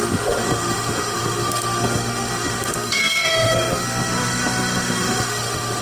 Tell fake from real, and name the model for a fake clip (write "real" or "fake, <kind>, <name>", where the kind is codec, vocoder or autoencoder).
fake, autoencoder, DAC-VAE